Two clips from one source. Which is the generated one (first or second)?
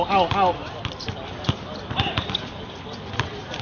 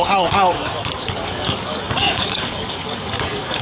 second